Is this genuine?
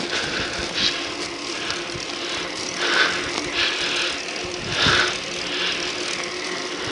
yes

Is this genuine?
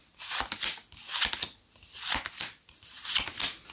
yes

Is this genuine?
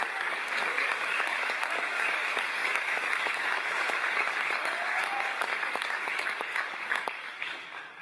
no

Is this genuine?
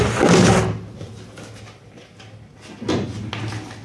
yes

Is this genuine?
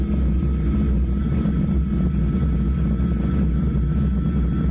yes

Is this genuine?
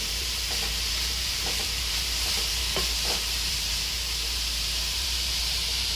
no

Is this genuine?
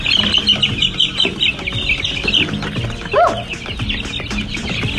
yes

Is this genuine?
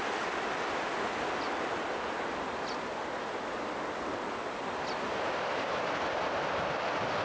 yes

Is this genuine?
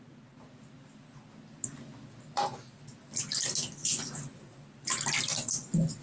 yes